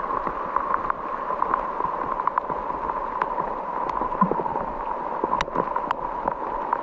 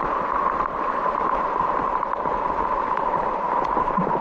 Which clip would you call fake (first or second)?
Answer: second